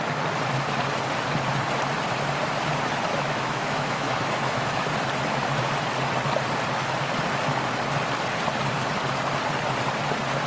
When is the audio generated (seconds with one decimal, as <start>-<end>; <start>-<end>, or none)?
3.1-5.0